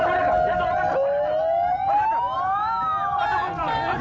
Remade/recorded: recorded